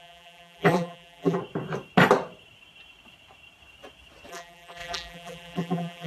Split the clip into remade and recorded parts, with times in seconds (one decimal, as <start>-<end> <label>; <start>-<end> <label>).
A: 0.0-1.4 remade; 1.4-4.3 recorded; 4.3-6.1 remade